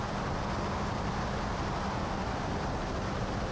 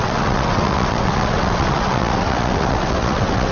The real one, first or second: first